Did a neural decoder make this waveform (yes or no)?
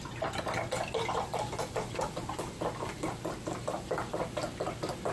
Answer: no